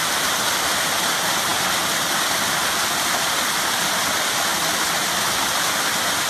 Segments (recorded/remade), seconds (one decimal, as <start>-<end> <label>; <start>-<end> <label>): 0.0-6.3 recorded